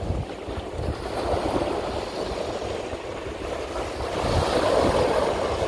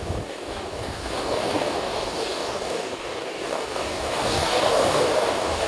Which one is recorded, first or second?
first